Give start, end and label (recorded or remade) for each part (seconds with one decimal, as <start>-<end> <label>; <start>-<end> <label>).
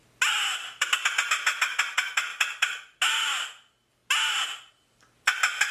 0.0-5.7 recorded